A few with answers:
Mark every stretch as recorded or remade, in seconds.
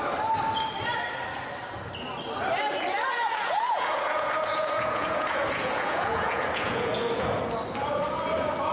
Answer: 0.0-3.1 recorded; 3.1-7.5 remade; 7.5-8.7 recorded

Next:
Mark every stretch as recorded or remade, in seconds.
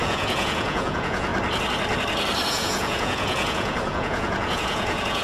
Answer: 0.0-1.3 remade; 1.3-2.5 recorded; 2.5-5.2 remade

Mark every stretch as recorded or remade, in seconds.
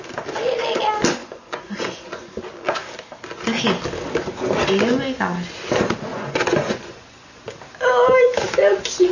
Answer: 0.0-1.2 recorded; 1.2-2.3 remade; 2.3-6.1 recorded; 6.1-7.4 remade; 7.4-9.1 recorded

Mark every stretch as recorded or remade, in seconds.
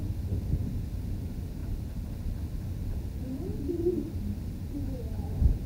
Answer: 0.0-5.7 recorded